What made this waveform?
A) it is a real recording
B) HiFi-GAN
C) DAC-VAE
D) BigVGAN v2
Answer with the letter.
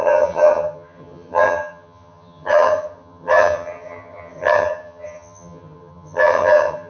B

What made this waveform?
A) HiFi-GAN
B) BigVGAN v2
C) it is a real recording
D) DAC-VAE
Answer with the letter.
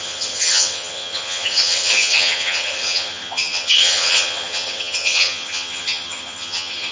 A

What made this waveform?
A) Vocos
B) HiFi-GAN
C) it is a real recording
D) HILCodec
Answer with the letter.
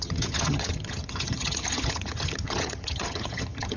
B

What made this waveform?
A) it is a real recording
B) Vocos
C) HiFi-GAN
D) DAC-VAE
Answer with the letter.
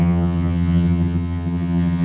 C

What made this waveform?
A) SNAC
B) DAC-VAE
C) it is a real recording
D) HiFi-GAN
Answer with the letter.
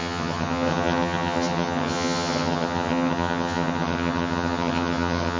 D